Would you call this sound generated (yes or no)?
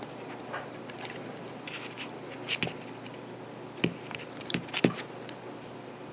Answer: no